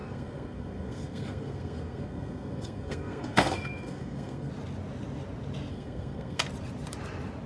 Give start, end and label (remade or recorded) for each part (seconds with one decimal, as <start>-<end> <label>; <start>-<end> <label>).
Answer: 0.0-4.5 remade; 4.5-5.7 recorded; 5.7-6.4 remade; 6.4-7.5 recorded